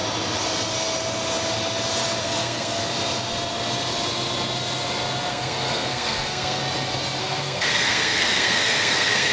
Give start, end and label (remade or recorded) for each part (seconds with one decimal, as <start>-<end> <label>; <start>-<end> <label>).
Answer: 0.0-2.2 recorded; 2.2-2.8 remade; 2.8-5.3 recorded; 5.3-6.6 remade; 6.6-7.2 recorded; 7.2-9.3 remade